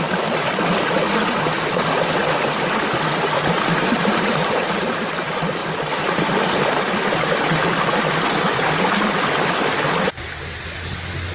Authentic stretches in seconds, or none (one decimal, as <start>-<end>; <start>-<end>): 0.0-11.3